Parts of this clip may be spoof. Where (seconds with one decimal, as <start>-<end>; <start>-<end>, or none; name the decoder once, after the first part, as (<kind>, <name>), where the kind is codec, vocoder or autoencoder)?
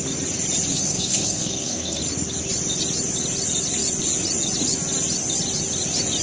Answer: 0.7-2.0 (codec, SNAC)